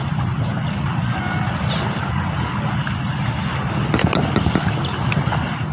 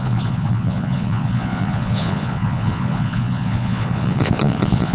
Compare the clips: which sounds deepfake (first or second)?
second